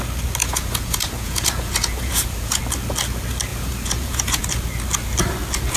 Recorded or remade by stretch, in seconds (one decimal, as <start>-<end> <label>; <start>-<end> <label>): 0.0-0.4 recorded; 0.4-2.6 remade; 2.6-3.5 recorded; 3.5-4.4 remade; 4.4-5.8 recorded